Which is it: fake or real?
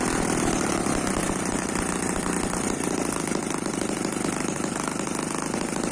real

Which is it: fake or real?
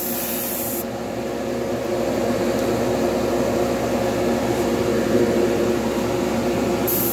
real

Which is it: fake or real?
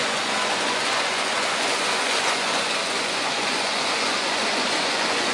fake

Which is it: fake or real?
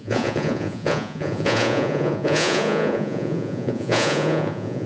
fake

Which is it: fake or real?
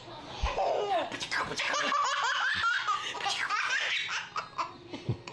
real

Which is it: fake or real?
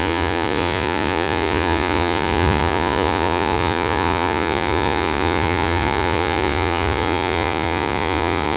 fake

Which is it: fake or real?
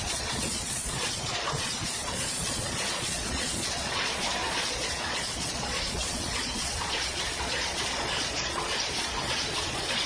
fake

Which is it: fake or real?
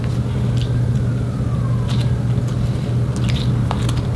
real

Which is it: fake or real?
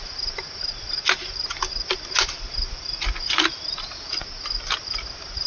real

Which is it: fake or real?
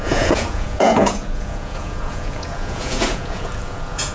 fake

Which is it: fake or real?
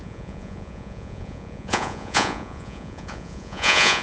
fake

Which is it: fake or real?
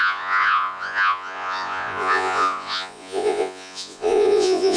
fake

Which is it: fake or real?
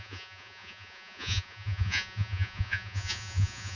fake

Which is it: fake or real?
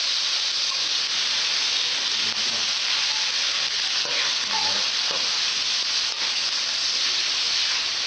real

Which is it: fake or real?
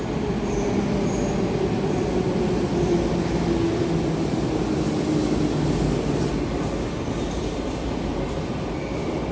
real